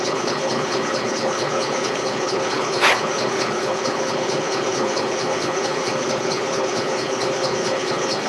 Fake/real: fake